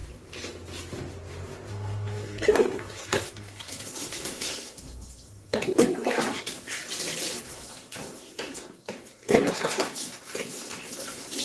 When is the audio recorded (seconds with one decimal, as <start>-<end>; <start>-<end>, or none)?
0.0-1.7; 6.8-7.4